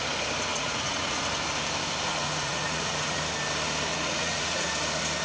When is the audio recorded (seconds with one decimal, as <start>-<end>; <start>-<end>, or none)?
0.0-0.5; 1.2-2.1; 3.2-3.9; 4.7-5.2

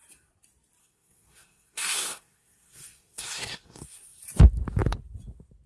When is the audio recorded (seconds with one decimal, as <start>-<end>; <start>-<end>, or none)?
0.0-0.8; 4.2-5.7

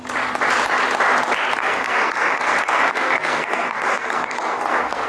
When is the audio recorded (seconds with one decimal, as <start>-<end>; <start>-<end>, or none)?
0.0-1.6